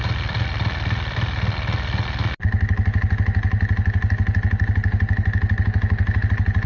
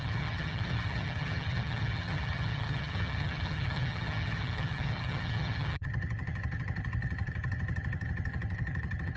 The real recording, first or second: first